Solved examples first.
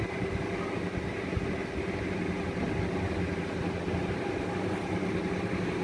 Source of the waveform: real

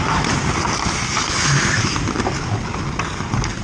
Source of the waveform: real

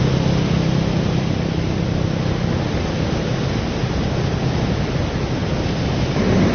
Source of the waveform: real